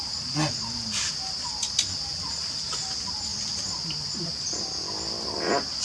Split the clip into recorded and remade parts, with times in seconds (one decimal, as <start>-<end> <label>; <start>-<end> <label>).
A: 0.0-5.8 recorded